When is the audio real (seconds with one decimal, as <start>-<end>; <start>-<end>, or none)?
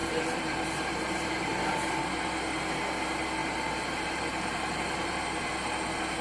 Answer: 2.0-3.4; 5.2-6.2